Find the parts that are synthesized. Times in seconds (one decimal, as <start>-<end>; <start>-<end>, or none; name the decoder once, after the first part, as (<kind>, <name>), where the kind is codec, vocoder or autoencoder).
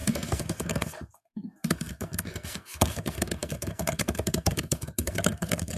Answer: 0.0-5.8 (codec, SNAC)